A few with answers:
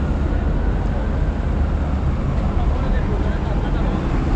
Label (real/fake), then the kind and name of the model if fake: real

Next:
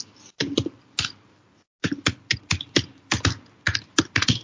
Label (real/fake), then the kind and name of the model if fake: real